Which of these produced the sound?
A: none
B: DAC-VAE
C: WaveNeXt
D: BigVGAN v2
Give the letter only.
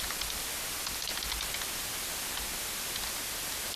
A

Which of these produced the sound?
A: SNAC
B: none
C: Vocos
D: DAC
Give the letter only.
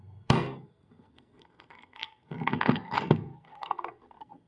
A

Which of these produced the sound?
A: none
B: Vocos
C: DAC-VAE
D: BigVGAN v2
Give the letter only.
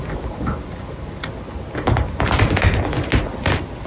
A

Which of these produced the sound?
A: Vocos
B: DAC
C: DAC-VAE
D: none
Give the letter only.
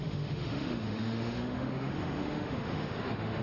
C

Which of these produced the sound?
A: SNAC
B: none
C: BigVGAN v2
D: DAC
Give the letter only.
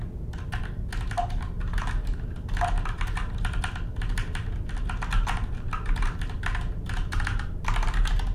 B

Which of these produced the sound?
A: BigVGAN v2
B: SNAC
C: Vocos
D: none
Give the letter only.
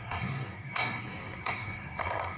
B